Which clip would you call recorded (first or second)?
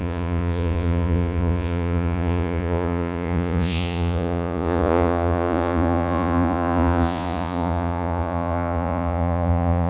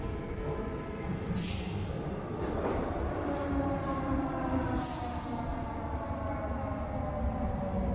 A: second